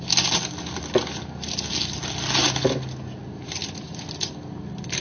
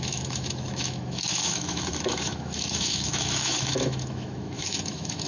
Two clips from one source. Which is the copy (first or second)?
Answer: second